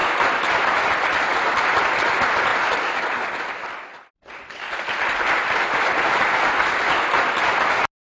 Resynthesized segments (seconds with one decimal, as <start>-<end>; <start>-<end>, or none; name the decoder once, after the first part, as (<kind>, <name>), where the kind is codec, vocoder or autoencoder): 0.0-1.6 (vocoder, BigVGAN v2)